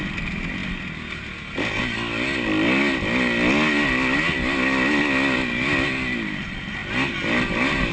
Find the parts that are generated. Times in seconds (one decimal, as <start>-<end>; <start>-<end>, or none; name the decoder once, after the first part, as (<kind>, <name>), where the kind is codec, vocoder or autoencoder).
none